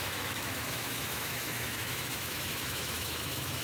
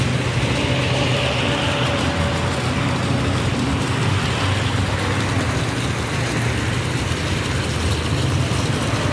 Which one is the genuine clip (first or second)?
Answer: second